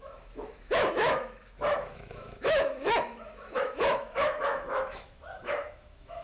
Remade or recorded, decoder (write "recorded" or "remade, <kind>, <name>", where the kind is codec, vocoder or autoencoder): remade, autoencoder, DAC-VAE